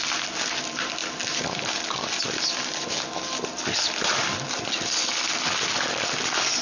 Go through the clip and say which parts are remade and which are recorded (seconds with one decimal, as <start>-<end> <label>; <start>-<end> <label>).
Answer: 0.0-6.6 recorded